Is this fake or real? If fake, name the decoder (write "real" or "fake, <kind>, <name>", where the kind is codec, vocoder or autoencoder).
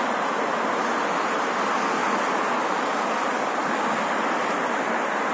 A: real